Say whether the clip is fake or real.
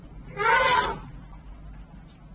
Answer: real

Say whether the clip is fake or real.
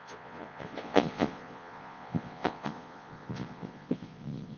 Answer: fake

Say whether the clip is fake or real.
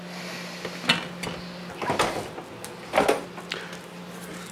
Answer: real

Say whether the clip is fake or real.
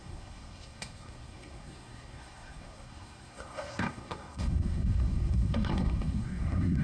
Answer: fake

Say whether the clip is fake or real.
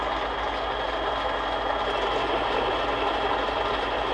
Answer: real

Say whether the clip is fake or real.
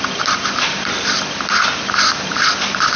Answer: real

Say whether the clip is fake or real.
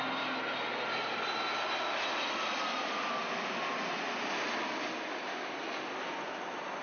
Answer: real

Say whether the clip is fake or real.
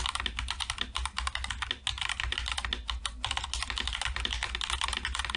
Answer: real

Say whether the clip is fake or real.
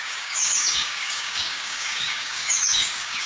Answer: fake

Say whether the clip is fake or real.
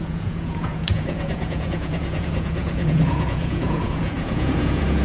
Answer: fake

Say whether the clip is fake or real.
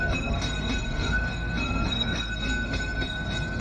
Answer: fake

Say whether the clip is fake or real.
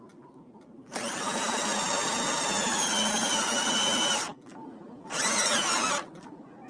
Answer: real